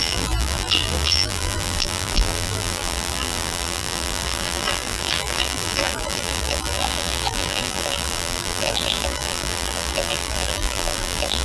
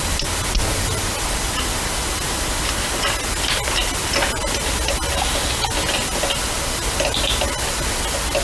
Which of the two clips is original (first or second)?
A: second